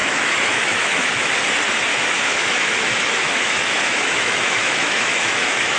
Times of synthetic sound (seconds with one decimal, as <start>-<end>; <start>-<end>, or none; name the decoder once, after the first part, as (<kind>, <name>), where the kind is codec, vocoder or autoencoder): 0.0-1.3 (autoencoder, DAC-VAE); 1.9-5.8